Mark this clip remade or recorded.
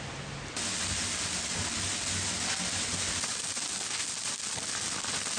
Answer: recorded